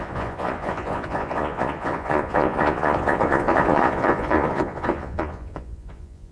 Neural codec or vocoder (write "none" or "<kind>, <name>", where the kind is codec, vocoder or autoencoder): vocoder, Vocos